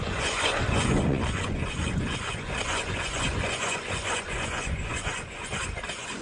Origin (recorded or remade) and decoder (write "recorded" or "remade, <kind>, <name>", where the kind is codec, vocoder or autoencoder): remade, vocoder, Vocos